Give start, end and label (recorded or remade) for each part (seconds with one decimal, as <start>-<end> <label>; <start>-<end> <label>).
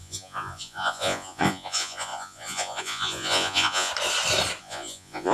0.0-3.9 remade; 3.9-4.6 recorded; 4.6-5.3 remade